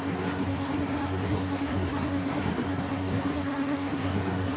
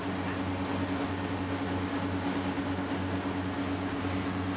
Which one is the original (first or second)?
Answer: second